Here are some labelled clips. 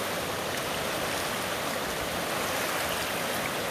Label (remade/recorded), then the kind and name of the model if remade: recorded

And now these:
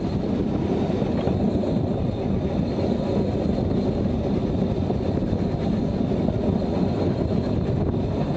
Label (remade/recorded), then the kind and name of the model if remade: recorded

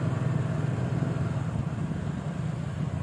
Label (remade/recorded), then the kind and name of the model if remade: recorded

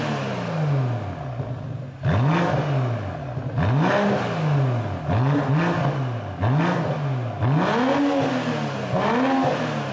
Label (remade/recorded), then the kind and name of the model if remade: recorded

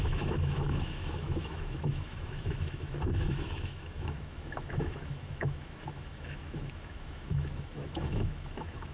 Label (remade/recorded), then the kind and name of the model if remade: remade, autoencoder, DAC-VAE